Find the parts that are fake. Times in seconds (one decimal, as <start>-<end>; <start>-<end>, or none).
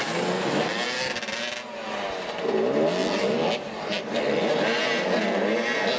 none